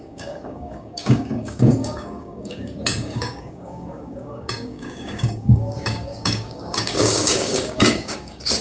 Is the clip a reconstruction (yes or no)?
yes